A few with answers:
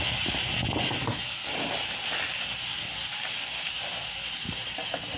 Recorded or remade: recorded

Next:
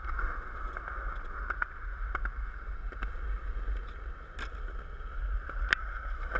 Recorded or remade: recorded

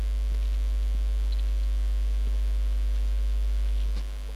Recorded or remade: recorded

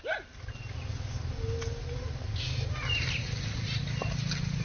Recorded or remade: recorded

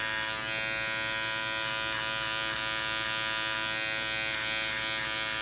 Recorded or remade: recorded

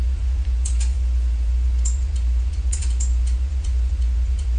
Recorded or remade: remade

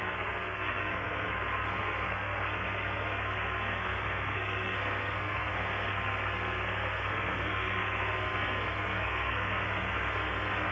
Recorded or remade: remade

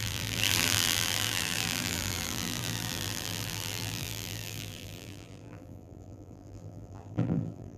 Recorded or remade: remade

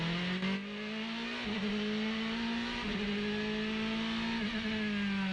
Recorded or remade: recorded